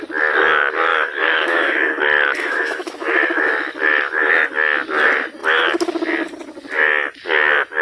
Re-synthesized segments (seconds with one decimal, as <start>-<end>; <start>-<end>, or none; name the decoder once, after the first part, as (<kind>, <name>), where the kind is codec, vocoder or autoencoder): 0.9-4.3 (autoencoder, DAC-VAE)